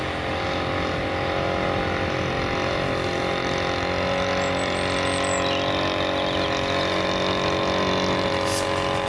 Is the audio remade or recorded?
recorded